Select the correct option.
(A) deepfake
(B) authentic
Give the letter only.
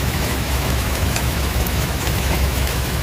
A